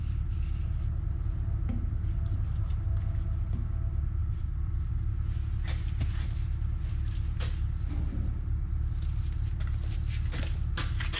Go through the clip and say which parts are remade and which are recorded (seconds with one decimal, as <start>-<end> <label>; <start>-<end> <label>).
0.0-4.2 recorded; 4.2-4.9 remade; 4.9-11.2 recorded